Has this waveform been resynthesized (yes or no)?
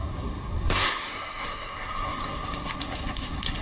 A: yes